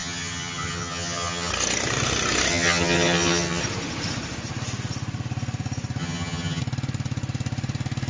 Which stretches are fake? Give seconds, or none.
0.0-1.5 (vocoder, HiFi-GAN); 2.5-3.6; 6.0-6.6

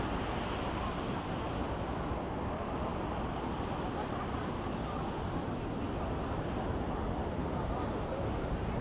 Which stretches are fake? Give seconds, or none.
none

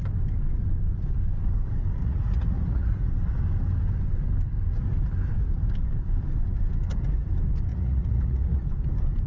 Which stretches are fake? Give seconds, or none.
2.0-3.1 (vocoder, Vocos); 7.7-8.7

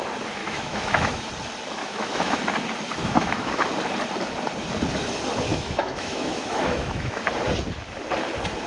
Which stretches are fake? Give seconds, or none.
0.4-1.3 (autoencoder, DAC-VAE); 1.8-2.4; 3.0-3.5; 5.5-7.2